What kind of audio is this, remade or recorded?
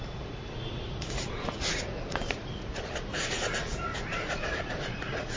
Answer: remade